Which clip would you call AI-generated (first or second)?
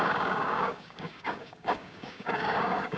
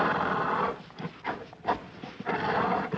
first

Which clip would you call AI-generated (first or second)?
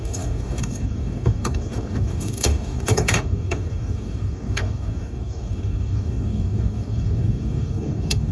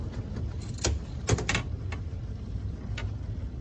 first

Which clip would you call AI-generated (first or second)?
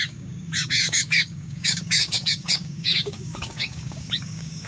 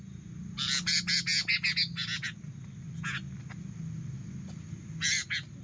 first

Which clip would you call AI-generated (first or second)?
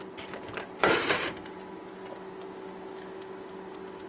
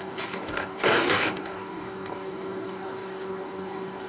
second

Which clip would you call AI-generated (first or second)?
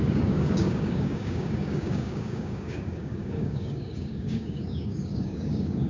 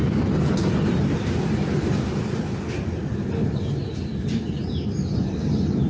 first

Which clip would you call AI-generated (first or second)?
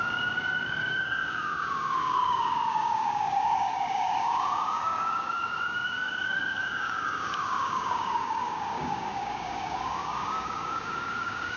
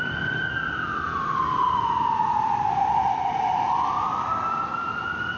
first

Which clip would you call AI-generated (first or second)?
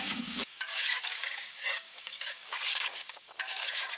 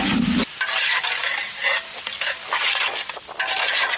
first